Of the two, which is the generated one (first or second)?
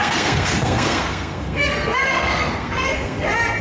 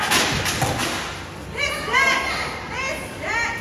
first